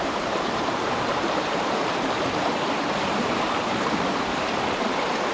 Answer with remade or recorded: remade